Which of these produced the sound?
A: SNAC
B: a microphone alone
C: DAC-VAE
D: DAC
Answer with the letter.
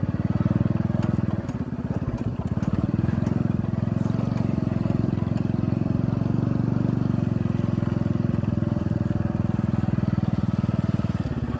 B